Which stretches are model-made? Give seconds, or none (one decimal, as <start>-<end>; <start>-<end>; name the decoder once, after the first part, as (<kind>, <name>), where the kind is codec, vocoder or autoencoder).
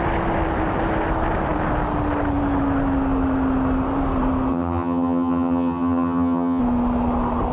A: 4.5-6.6 (vocoder, HiFi-GAN)